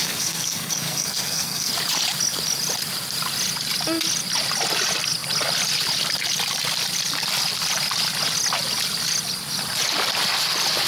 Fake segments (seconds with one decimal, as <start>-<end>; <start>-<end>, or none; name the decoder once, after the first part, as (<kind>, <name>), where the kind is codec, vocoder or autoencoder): 0.0-1.7 (codec, SNAC)